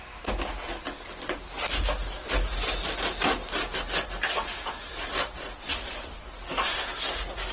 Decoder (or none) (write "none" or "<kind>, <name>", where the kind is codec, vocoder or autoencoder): none